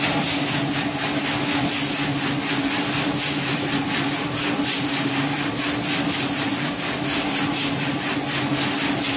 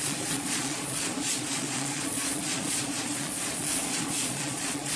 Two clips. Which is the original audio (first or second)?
first